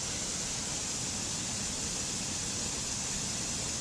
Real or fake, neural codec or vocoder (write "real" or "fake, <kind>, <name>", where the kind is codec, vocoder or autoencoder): real